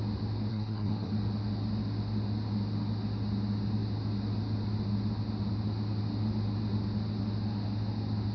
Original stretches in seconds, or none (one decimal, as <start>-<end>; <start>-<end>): 0.0-0.5; 1.1-8.3